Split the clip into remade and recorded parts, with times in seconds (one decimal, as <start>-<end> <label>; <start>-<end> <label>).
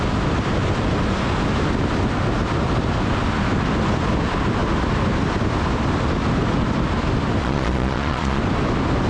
0.0-7.4 recorded; 7.4-8.4 remade; 8.4-9.1 recorded